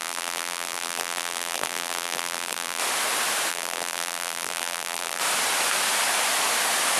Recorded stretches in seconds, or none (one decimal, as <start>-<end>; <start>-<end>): 2.8-3.5; 5.2-7.0